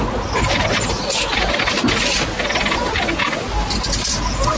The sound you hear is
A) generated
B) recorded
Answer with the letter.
B